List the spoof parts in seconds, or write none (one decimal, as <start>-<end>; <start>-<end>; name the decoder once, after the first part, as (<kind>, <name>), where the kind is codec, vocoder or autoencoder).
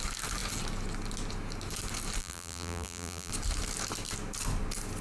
2.2-3.3 (vocoder, BigVGAN v2)